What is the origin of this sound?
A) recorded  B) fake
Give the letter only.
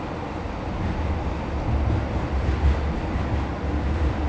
A